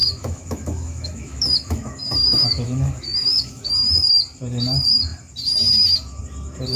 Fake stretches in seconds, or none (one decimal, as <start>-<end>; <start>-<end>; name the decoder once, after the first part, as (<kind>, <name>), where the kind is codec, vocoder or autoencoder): 0.0-3.7 (autoencoder, DAC-VAE)